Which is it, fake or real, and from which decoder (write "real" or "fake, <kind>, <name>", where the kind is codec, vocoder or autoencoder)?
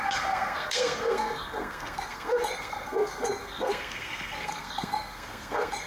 fake, codec, SNAC